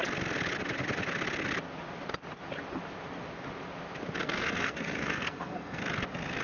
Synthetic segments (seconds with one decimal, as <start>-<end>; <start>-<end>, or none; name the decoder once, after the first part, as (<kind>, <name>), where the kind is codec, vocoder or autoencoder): 4.2-5.8 (codec, SNAC)